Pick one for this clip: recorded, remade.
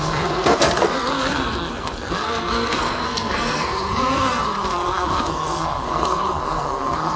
remade